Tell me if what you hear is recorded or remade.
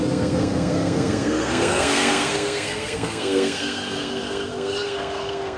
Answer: remade